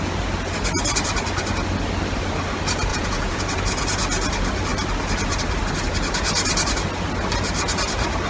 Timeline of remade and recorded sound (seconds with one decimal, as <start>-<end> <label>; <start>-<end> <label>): 0.0-2.9 recorded; 2.9-3.4 remade; 3.4-8.3 recorded